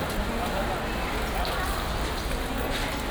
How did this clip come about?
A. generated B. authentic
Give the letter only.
B